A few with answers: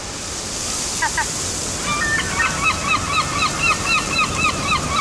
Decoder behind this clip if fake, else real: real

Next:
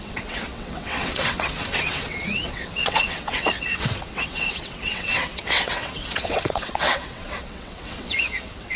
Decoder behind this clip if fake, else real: fake, vocoder, WaveNeXt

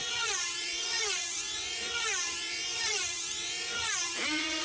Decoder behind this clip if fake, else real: fake, vocoder, Vocos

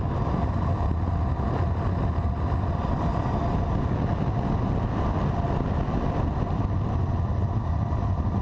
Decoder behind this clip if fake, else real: real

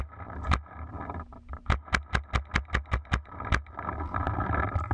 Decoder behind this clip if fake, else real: real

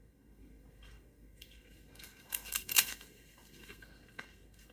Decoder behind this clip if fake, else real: fake, codec, SNAC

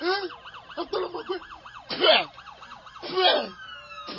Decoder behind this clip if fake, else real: fake, vocoder, BigVGAN v2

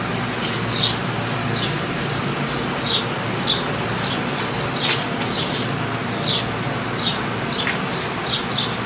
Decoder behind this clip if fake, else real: real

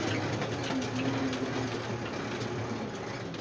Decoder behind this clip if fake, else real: real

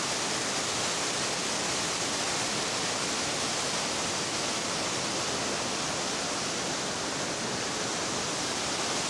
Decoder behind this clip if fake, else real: real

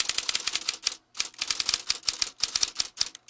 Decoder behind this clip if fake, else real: real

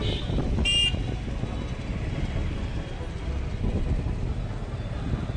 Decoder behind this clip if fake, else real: real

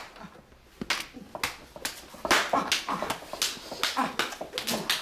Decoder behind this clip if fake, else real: real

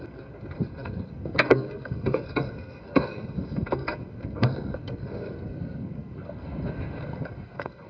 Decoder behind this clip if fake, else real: fake, codec, SNAC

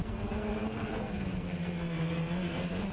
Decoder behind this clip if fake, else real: fake, codec, SNAC